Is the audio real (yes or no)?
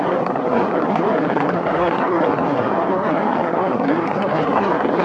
no